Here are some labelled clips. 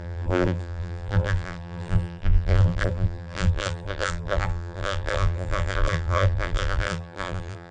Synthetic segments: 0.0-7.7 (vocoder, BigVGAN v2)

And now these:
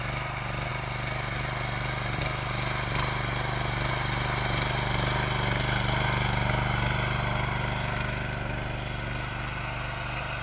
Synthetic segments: none

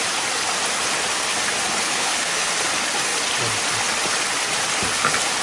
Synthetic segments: 1.8-2.5 (codec, HILCodec)

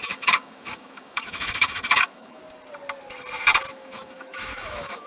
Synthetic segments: 0.0-2.4 (autoencoder, DAC-VAE); 3.7-5.1

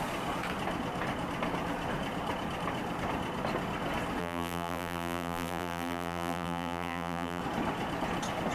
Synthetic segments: 4.2-7.4 (vocoder, BigVGAN v2)

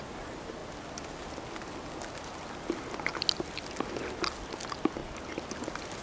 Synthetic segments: none